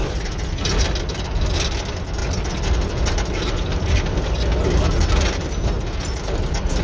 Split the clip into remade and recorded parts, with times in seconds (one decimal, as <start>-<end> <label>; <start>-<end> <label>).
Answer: 0.0-6.8 recorded